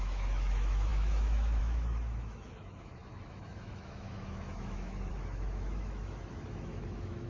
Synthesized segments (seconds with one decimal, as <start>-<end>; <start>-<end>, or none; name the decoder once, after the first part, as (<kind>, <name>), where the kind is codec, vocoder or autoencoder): 0.0-7.3 (autoencoder, DAC-VAE)